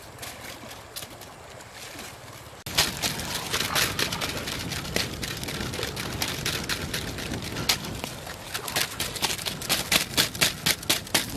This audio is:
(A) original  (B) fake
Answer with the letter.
A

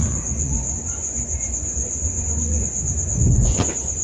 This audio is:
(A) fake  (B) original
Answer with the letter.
A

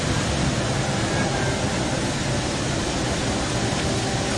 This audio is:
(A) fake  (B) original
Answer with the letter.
B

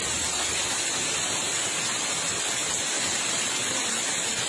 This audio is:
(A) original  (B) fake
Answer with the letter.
A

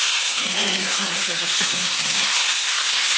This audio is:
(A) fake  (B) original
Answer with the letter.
A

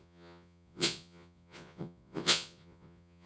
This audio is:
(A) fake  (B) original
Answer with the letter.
A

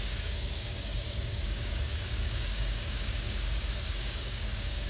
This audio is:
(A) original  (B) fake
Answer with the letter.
B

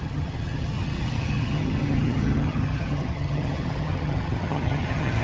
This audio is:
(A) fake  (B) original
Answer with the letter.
A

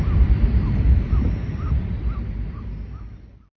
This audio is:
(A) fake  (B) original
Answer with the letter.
B